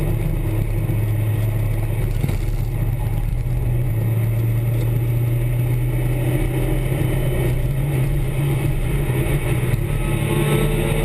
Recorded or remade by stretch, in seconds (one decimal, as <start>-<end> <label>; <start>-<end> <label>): 0.0-3.3 recorded; 3.3-3.9 remade; 3.9-7.2 recorded; 7.2-9.7 remade; 9.7-11.0 recorded